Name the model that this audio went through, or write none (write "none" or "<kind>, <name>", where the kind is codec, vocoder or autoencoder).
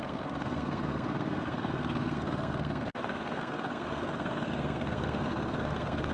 codec, SNAC